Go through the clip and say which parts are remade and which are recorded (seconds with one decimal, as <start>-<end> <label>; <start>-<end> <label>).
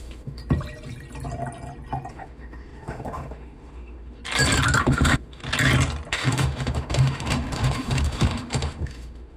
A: 0.0-0.4 remade; 0.4-2.1 recorded; 2.1-4.2 remade; 4.2-4.8 recorded; 4.8-5.4 remade; 5.4-6.1 recorded; 6.1-9.4 remade